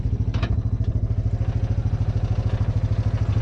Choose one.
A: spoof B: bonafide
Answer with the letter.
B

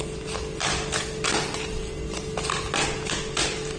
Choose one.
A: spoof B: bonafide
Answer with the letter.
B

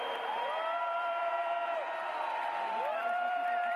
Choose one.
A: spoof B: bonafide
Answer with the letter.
A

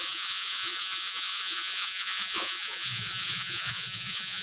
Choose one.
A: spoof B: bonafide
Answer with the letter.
A